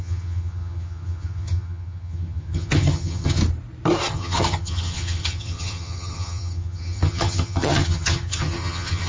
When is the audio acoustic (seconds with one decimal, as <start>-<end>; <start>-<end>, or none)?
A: 3.4-4.1